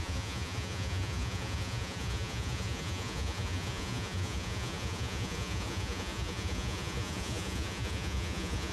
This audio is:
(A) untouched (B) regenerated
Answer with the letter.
B